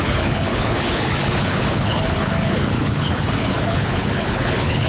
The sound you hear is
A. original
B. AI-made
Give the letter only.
B